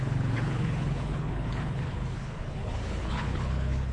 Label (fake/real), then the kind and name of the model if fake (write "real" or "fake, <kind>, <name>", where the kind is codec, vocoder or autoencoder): fake, codec, HILCodec